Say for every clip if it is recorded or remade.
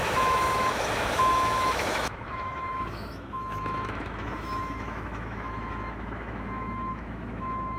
remade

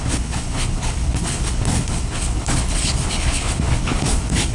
remade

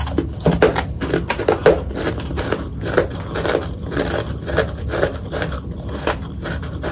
recorded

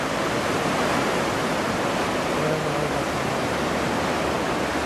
recorded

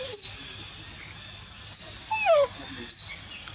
recorded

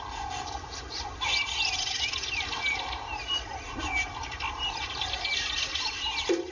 recorded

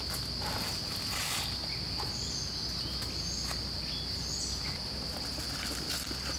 recorded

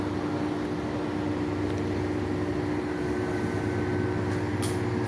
recorded